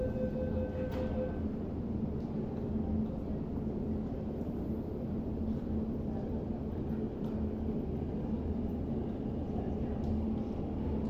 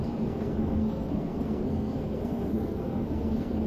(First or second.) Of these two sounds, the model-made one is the second